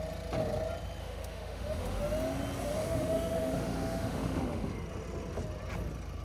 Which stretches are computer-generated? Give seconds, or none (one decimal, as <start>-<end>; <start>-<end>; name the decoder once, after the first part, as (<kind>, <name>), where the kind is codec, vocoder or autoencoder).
1.0-2.0 (autoencoder, DAC-VAE); 2.8-4.7